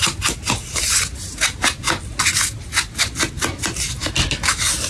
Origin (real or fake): real